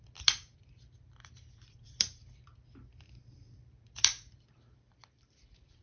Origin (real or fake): fake